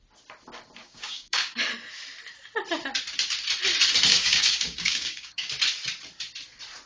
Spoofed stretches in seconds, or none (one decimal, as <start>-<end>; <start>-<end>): 0.8-1.6; 4.1-5.5